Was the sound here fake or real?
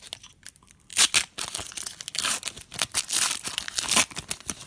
real